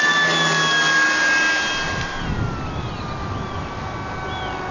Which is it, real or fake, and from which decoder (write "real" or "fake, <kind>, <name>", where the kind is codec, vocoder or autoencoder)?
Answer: real